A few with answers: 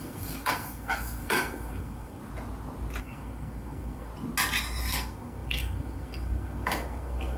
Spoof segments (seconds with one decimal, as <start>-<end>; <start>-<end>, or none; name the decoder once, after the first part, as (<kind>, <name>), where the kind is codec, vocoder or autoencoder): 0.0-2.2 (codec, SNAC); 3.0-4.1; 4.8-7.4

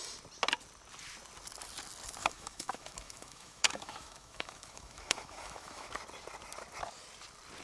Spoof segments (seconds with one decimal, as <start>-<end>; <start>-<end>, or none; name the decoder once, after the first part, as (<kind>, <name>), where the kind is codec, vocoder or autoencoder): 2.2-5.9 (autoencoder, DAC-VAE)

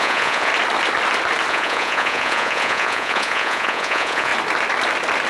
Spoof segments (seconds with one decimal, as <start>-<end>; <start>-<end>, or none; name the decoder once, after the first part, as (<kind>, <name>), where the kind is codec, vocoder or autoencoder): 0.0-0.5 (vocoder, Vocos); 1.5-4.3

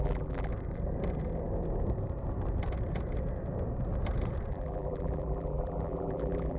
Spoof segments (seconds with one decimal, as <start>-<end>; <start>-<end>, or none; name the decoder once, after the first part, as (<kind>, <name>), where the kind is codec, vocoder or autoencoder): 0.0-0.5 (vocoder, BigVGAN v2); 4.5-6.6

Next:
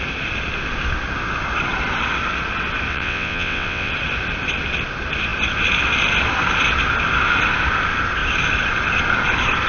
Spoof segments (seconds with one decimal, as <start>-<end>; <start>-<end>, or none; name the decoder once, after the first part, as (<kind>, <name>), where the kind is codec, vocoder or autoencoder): 2.9-3.9 (vocoder, WaveNeXt)

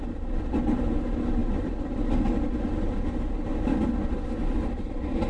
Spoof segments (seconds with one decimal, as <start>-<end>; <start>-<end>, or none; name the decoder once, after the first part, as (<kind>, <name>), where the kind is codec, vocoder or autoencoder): none